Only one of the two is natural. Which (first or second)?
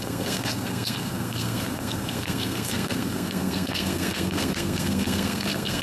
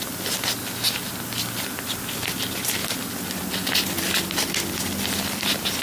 second